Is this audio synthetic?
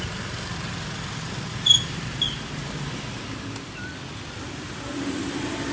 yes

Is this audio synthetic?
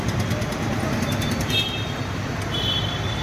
no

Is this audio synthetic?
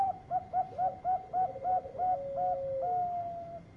no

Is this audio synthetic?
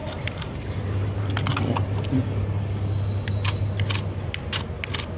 yes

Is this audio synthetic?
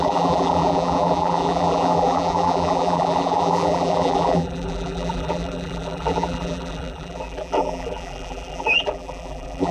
yes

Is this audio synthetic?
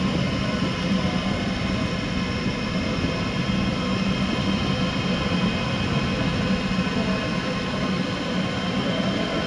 no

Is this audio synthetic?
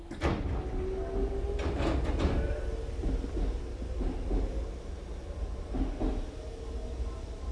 no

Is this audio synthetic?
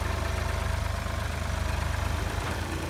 no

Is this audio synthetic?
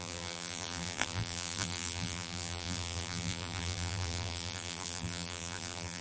yes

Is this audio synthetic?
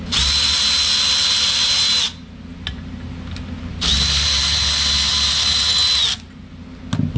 no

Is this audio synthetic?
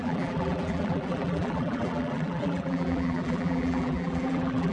yes